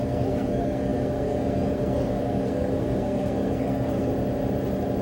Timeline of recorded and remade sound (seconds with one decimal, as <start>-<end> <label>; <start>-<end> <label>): 0.0-4.1 remade; 4.1-5.0 recorded